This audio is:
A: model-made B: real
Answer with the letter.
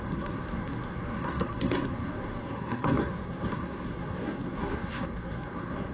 A